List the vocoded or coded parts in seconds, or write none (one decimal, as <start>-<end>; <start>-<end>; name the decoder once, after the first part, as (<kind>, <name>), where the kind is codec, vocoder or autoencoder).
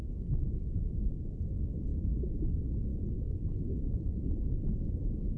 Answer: none